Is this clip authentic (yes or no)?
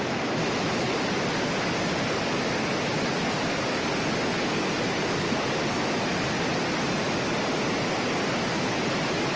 yes